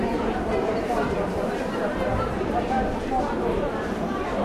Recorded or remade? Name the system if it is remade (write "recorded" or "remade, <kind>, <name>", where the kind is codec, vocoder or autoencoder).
remade, vocoder, BigVGAN v2